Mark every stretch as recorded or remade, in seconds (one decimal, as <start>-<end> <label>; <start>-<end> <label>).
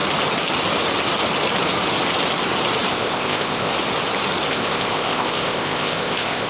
0.0-2.9 recorded; 2.9-3.7 remade; 3.7-4.5 recorded; 4.5-6.5 remade